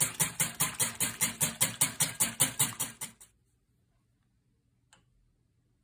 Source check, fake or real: real